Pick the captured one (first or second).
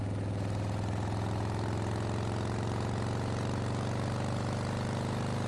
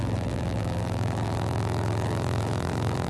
first